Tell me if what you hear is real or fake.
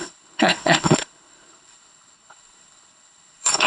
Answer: fake